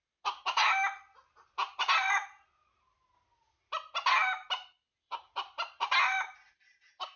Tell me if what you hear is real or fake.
real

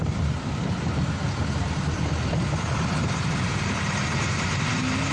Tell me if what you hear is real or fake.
fake